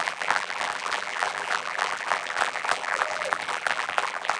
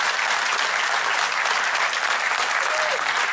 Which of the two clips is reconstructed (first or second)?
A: first